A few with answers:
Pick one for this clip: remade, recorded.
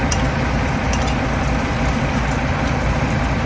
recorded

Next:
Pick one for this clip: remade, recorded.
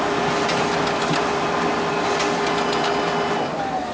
recorded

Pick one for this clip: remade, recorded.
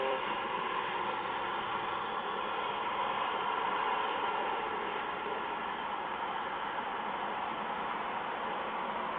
remade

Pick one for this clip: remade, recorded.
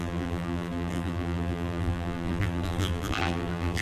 remade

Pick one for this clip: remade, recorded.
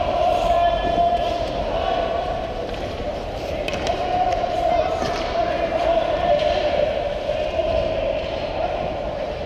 remade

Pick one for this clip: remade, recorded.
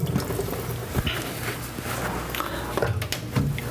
recorded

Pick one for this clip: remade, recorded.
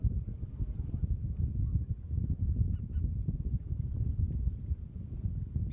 recorded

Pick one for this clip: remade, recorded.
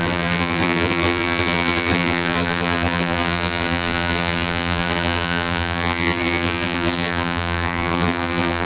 remade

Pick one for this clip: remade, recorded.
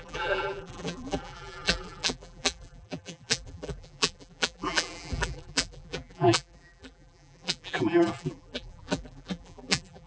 remade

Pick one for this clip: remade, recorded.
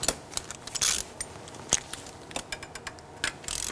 recorded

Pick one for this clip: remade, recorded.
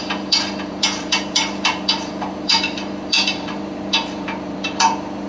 remade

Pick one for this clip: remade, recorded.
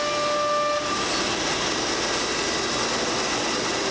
recorded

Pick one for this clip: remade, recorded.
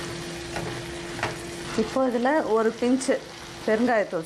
recorded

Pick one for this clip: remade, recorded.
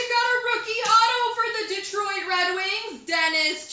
recorded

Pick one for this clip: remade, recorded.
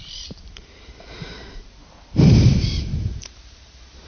remade